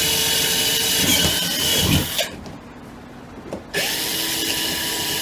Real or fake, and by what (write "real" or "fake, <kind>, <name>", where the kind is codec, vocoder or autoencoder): real